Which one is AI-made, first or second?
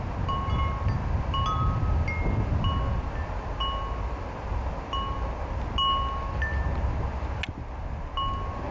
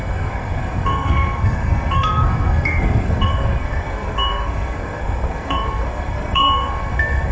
second